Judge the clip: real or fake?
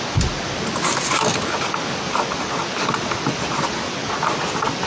real